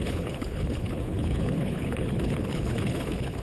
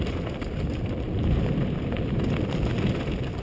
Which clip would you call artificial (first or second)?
first